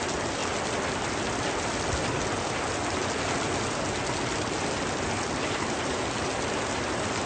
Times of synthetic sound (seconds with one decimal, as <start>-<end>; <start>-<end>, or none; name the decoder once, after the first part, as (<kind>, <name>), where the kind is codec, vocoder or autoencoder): none